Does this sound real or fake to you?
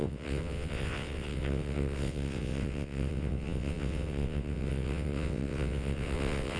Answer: fake